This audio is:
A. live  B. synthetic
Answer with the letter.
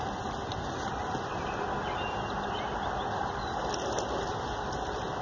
A